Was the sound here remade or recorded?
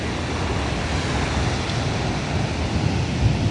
recorded